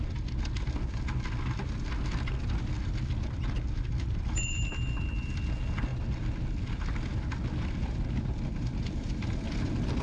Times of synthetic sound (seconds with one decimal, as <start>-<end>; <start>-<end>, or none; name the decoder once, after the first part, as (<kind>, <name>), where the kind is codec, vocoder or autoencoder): 3.2-4.7 (vocoder, BigVGAN v2)